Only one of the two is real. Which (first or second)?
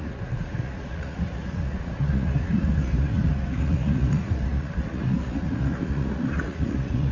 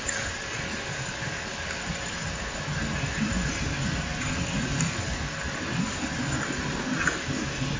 second